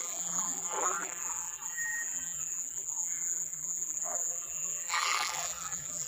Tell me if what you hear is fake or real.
fake